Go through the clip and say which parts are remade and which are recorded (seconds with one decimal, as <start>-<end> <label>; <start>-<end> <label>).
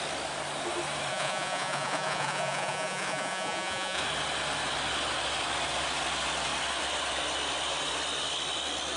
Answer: 0.0-1.1 recorded; 1.1-4.0 remade; 4.0-9.0 recorded